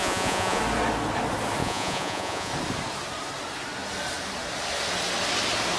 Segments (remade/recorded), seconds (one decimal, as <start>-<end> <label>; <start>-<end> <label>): 0.0-0.6 remade; 0.6-1.6 recorded; 1.6-2.5 remade; 2.5-5.8 recorded